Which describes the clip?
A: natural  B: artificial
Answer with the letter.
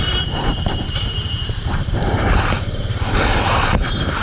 B